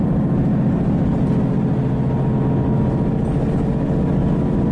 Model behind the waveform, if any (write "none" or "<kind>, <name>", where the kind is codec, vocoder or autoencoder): none